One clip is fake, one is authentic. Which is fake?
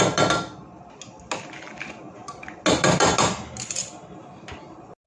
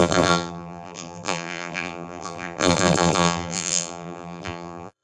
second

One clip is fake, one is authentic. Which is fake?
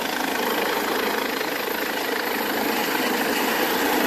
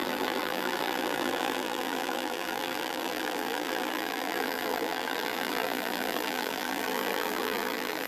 second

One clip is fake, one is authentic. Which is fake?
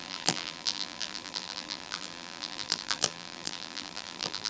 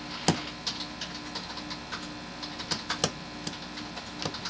first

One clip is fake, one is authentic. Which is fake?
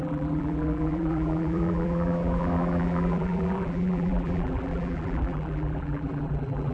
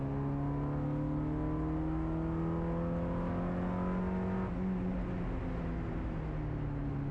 first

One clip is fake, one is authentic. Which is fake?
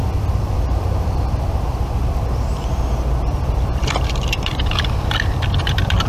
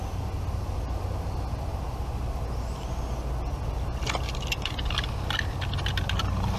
first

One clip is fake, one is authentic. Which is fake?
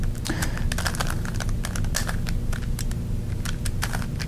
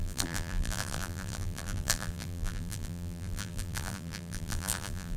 second